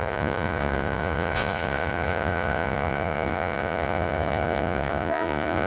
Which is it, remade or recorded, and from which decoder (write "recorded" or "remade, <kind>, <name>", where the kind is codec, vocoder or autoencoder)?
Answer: remade, vocoder, Vocos